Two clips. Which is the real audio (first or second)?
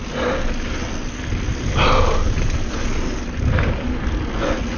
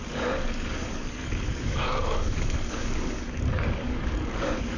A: first